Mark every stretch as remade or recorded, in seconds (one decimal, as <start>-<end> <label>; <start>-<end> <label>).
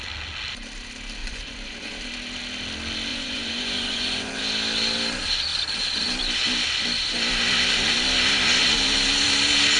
0.0-1.2 recorded; 1.2-1.9 remade; 1.9-3.1 recorded; 3.1-4.4 remade; 4.4-9.8 recorded